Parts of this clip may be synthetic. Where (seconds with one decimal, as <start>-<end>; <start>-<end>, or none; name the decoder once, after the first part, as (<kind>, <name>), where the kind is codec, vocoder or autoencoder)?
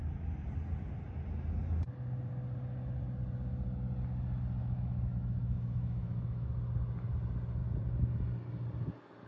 4.6-6.5 (autoencoder, DAC-VAE)